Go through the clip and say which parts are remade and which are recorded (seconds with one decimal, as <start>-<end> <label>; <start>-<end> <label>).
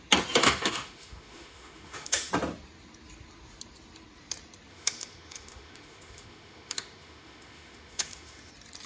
0.0-0.4 recorded; 0.4-2.3 remade; 2.3-4.7 recorded; 4.7-8.5 remade; 8.5-8.9 recorded